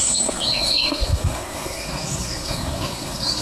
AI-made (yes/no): yes